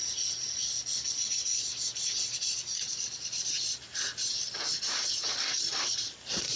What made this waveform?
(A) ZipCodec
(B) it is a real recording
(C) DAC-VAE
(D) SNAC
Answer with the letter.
B